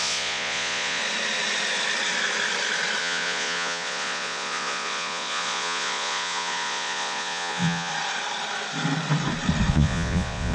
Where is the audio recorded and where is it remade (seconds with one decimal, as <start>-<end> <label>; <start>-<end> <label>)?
0.0-1.0 remade; 1.0-3.0 recorded; 3.0-7.9 remade; 7.9-9.7 recorded; 9.7-10.5 remade